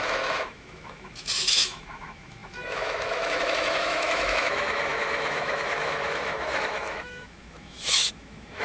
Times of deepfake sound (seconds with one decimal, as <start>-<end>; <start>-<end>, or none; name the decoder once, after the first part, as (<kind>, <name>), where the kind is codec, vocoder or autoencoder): 0.0-8.6 (autoencoder, DAC-VAE)